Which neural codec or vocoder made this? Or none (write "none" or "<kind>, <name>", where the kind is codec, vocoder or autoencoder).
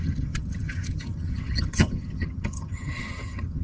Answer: vocoder, HiFi-GAN